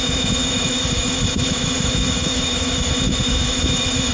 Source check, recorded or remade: remade